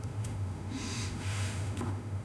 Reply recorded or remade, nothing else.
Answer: remade